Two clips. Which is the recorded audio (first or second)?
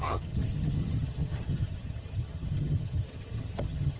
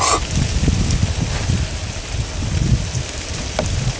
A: second